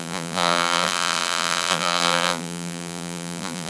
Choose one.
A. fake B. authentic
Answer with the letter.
A